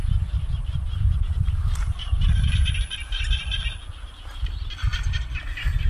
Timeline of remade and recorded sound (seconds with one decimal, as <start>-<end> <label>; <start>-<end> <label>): 0.0-3.3 remade; 3.3-5.9 recorded